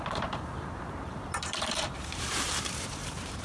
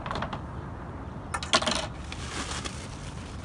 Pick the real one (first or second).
second